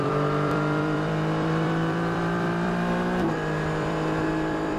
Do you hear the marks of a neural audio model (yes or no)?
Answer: yes